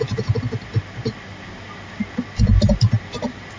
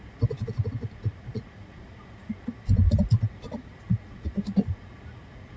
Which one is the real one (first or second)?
first